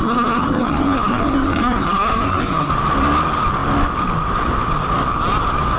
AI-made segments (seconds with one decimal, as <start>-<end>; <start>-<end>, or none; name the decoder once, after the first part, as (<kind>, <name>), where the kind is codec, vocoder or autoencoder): 0.0-2.7 (codec, SNAC)